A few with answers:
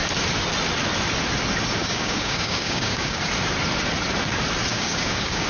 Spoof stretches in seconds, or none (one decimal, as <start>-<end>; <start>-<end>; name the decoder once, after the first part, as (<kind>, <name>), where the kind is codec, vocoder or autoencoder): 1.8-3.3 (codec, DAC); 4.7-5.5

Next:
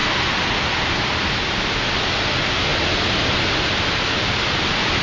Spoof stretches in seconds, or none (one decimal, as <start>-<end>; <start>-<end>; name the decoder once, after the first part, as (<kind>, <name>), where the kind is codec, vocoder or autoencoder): none

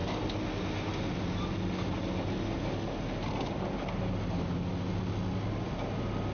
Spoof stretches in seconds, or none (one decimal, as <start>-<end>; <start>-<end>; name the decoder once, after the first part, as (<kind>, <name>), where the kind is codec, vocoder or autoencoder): none

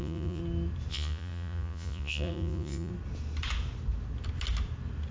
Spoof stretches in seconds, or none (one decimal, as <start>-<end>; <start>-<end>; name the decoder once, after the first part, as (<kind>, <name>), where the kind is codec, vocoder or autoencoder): 0.0-0.4 (vocoder, Vocos); 0.9-2.9

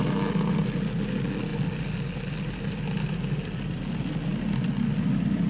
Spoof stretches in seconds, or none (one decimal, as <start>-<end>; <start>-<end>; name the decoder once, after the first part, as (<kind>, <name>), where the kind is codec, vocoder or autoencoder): none